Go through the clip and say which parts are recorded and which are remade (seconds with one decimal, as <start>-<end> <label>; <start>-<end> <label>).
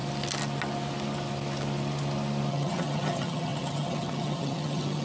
0.0-2.5 recorded; 2.5-5.0 remade